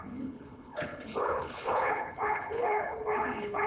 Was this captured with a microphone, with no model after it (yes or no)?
no